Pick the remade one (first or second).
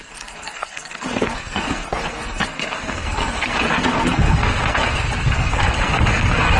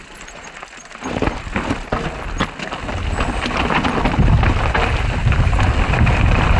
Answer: first